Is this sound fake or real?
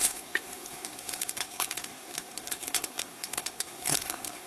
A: fake